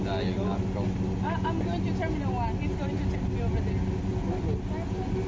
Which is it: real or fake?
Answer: real